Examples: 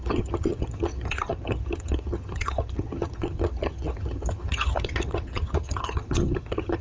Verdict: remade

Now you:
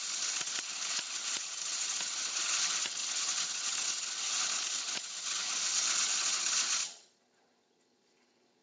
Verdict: remade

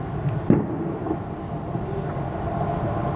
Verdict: recorded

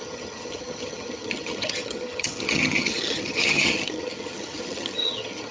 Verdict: remade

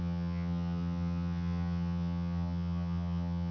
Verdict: remade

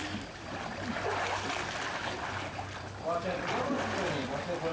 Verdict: recorded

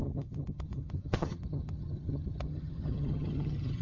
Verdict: remade